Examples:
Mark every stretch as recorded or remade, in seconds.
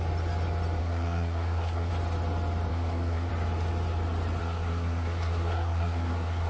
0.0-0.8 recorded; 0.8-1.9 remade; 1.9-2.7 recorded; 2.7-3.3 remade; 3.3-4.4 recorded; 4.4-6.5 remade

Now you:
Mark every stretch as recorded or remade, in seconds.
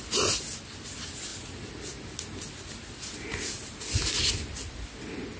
0.0-5.4 recorded